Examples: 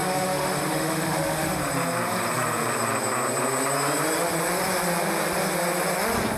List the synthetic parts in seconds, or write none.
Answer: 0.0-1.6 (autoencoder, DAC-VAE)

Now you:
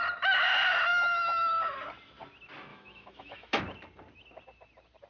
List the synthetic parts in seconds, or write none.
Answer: 2.7-3.6 (autoencoder, DAC-VAE)

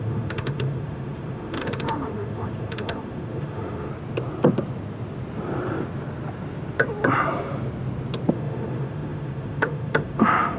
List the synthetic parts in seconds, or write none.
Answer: 0.0-3.9 (autoencoder, DAC-VAE); 8.3-10.6

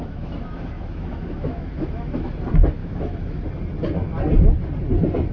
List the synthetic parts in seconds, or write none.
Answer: 0.0-2.3 (autoencoder, DAC-VAE); 2.8-3.4

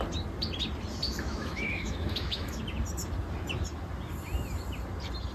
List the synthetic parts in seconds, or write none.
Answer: 1.1-2.6 (autoencoder, DAC-VAE)

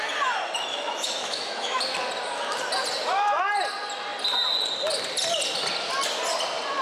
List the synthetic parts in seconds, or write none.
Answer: 0.7-1.8 (autoencoder, DAC-VAE)